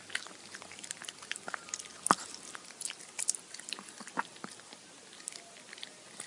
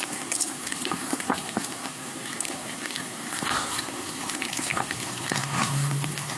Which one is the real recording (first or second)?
first